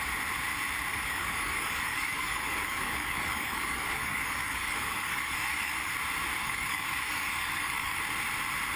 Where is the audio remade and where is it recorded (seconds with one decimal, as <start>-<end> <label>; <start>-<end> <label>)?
0.0-0.9 recorded; 0.9-5.9 remade; 5.9-6.4 recorded; 6.4-8.0 remade; 8.0-8.8 recorded